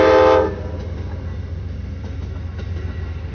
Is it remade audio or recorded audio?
recorded